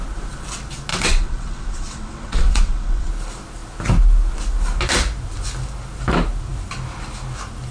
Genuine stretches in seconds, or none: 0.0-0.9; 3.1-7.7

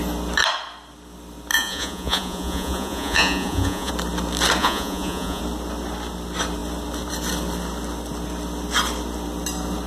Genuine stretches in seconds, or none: 0.0-1.5; 3.9-4.6; 5.4-9.9

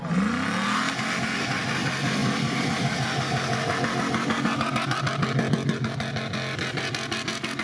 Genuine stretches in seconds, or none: 0.0-7.6

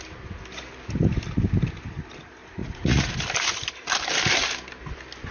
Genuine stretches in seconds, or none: 0.0-2.6; 3.1-5.3

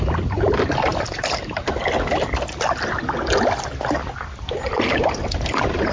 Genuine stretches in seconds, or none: 0.0-5.9

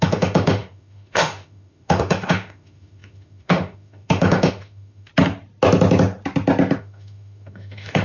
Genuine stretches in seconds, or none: 5.1-6.8

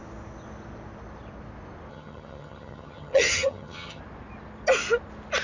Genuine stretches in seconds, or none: 0.0-1.9; 4.0-5.4